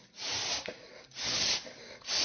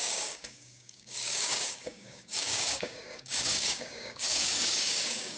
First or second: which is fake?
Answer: second